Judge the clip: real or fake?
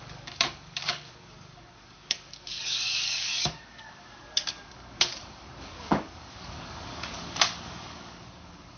fake